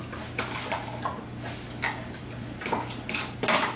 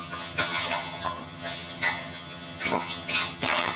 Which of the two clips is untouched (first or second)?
first